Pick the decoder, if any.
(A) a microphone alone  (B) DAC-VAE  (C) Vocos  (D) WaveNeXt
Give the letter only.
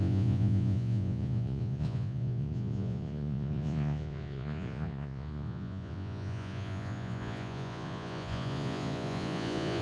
C